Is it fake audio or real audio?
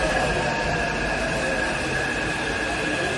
real